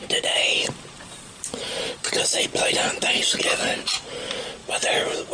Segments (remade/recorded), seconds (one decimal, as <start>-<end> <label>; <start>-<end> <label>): 0.0-2.7 remade; 2.7-5.3 recorded